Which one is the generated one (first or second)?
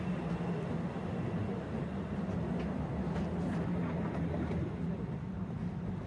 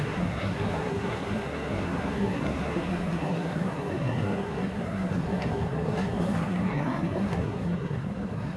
second